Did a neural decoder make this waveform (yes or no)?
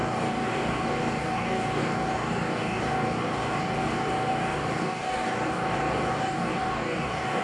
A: yes